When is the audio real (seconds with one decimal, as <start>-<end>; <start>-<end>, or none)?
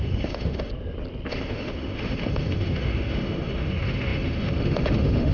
0.7-1.3